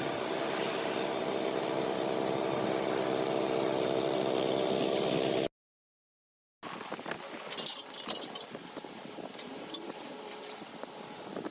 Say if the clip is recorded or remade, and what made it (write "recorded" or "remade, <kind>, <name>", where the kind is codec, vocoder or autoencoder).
recorded